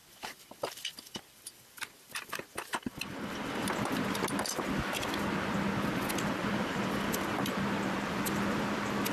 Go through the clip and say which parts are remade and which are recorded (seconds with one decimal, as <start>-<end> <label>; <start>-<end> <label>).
0.0-3.7 remade; 3.7-6.4 recorded; 6.4-7.3 remade; 7.3-9.1 recorded